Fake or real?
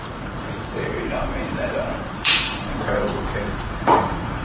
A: fake